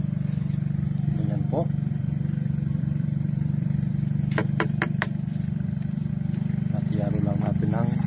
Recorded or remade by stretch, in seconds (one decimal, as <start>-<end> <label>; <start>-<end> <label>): 0.0-1.9 recorded; 1.9-3.9 remade; 3.9-4.4 recorded; 4.4-6.1 remade; 6.1-8.1 recorded